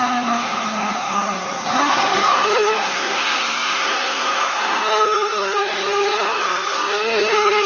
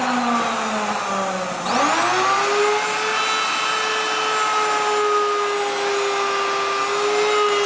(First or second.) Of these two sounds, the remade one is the first